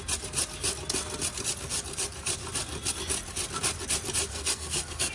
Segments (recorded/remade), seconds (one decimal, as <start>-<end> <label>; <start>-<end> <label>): 0.0-4.3 recorded; 4.3-5.1 remade